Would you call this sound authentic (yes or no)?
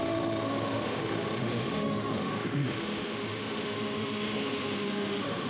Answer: no